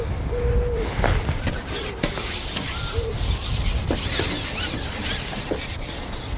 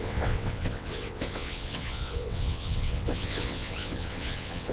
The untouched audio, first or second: first